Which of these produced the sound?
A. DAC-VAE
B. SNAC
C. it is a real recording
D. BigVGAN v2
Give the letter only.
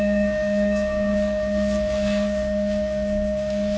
B